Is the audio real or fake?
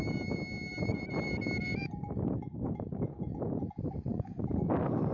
real